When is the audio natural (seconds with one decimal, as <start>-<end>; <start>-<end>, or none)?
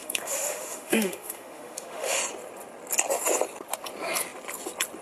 2.2-5.0